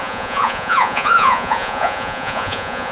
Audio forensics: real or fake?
fake